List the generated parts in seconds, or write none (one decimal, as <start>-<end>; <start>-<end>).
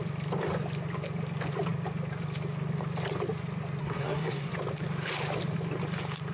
3.8-4.5